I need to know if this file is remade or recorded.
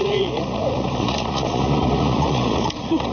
remade